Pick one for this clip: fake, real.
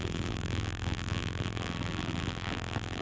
fake